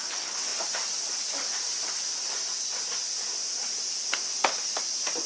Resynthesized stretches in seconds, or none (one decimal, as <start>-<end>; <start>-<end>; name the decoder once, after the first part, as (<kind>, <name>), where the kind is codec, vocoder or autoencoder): none